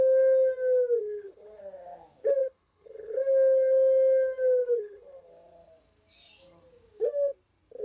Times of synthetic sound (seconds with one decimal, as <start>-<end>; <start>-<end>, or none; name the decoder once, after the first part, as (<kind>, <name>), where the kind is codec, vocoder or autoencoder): 1.0-1.6 (codec, HILCodec); 2.4-3.2; 4.6-5.3